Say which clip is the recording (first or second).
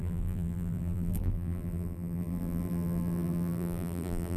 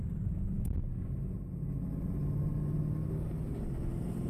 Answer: second